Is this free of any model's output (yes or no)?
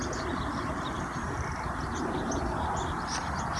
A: yes